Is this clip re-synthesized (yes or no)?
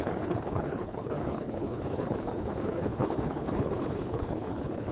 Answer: yes